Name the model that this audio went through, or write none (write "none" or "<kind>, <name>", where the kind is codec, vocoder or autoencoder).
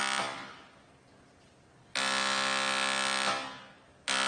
none